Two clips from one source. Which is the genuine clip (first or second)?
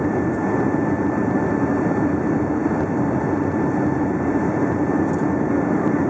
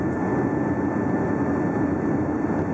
second